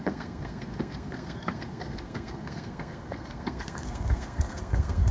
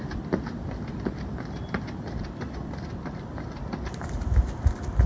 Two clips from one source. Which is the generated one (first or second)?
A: first